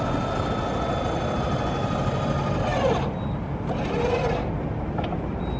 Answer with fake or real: real